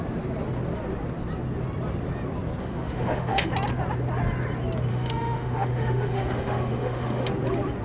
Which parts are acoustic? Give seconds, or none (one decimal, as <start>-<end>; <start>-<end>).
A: 0.0-2.6; 3.5-4.9; 7.3-7.8